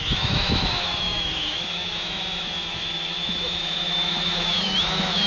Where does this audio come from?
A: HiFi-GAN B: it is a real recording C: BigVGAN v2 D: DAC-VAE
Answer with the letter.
D